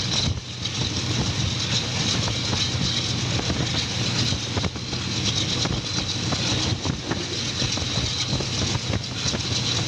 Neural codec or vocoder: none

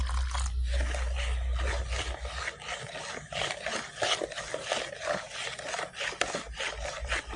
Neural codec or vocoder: none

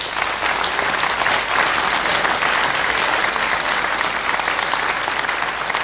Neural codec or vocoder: none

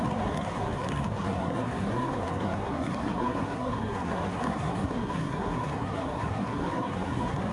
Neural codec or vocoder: codec, SNAC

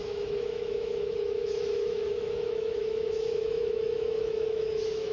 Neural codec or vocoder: autoencoder, DAC-VAE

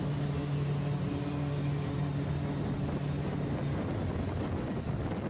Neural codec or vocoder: none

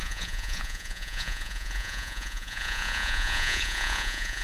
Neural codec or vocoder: vocoder, Vocos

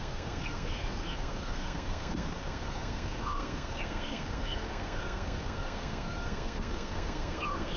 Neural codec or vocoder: codec, SNAC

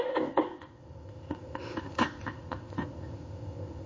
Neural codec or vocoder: codec, ZipCodec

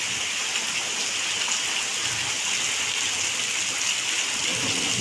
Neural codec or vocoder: none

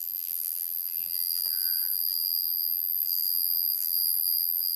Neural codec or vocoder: vocoder, BigVGAN v2